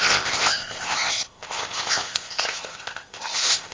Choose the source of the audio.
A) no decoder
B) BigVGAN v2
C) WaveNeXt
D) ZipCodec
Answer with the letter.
D